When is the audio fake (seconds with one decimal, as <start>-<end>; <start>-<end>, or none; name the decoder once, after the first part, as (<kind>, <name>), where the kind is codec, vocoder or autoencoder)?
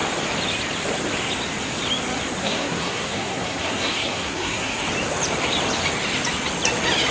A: 2.4-4.8 (codec, SNAC)